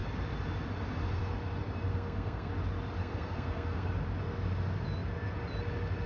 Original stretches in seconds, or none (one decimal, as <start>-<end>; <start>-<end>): 0.0-1.9; 2.5-3.0; 3.9-6.1